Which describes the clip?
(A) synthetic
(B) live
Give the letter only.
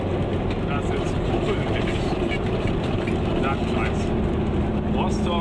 B